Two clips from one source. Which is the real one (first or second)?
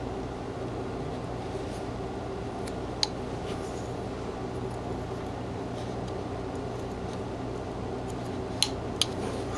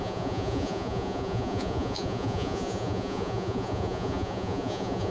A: first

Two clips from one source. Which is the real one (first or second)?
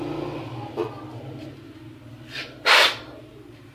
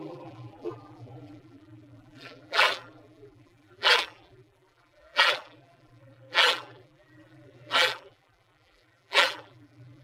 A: first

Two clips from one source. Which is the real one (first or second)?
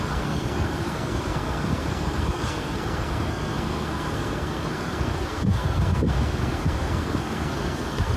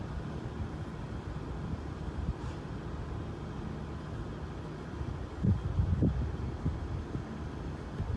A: second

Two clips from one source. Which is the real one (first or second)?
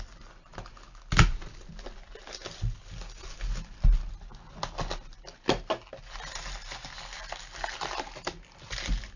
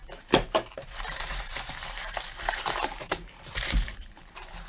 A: first